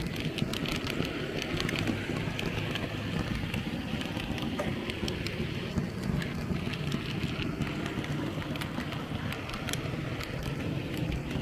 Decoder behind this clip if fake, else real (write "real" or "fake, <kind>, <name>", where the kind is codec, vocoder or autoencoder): real